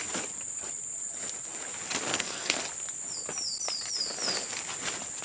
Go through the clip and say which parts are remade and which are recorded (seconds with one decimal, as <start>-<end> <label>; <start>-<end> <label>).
0.0-2.1 recorded; 2.1-2.6 remade; 2.6-5.2 recorded